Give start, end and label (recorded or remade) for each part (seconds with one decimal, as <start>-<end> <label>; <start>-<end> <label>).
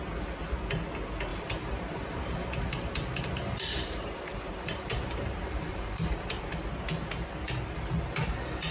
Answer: 0.0-1.3 recorded; 1.3-6.4 remade; 6.4-8.7 recorded